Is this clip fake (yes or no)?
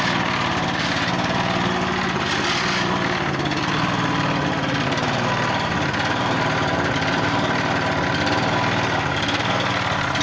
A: no